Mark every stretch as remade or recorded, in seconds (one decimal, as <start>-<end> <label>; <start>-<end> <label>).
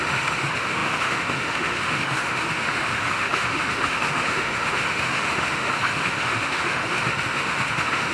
0.0-8.1 remade